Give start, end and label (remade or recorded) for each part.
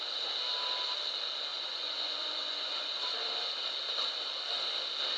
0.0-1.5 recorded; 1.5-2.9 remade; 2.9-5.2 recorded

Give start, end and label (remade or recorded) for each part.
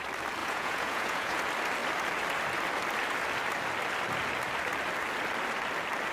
0.0-0.4 recorded; 0.4-1.4 remade; 1.4-6.1 recorded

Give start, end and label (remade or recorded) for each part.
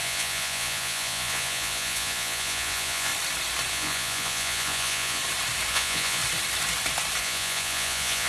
0.0-3.1 remade; 3.1-3.7 recorded; 3.7-5.2 remade; 5.2-5.7 recorded; 5.7-6.2 remade; 6.2-7.2 recorded; 7.2-8.3 remade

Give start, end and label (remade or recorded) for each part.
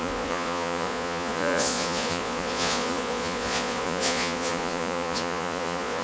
0.0-6.0 remade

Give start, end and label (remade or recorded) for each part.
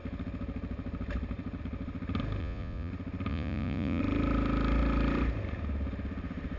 0.0-2.4 recorded; 2.4-2.9 remade; 2.9-3.3 recorded; 3.3-4.0 remade; 4.0-6.6 recorded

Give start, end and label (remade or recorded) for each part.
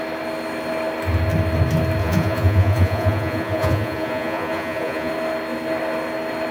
0.0-2.0 recorded; 2.0-5.1 remade; 5.1-6.5 recorded